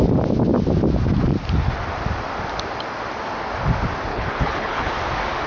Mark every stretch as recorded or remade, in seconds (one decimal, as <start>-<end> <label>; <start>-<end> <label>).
0.0-4.1 recorded; 4.1-4.9 remade; 4.9-5.5 recorded